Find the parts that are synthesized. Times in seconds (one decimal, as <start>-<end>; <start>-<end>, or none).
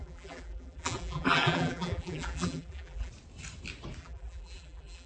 0.0-3.1; 4.0-5.1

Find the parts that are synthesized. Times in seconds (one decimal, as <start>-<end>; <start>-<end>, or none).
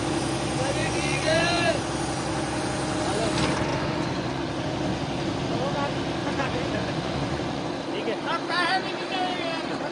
0.8-1.8; 3.7-4.4; 6.2-7.8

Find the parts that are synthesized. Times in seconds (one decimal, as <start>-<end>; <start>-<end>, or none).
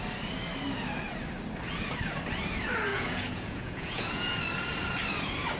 2.9-4.4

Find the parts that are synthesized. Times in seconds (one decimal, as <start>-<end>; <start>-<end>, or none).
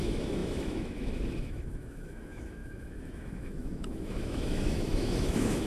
0.0-5.7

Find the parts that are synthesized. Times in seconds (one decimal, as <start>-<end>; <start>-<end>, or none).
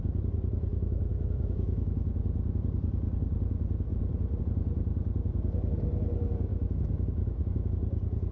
0.7-2.1; 6.5-7.7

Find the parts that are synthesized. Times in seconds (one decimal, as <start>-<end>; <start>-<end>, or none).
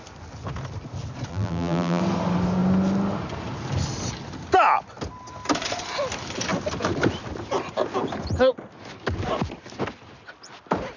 1.3-2.0